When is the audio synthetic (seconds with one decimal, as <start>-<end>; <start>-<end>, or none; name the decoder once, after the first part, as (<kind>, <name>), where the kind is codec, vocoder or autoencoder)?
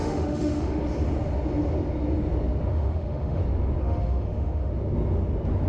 0.0-0.8 (autoencoder, DAC-VAE); 2.7-3.4; 3.8-4.7